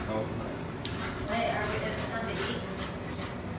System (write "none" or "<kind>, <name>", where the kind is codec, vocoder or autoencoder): none